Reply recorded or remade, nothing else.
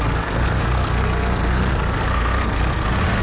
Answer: remade